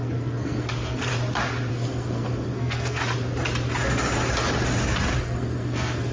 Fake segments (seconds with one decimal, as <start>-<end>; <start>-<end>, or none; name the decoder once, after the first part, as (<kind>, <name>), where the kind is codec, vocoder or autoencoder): 0.0-1.1 (codec, SNAC); 1.7-3.0; 5.2-6.1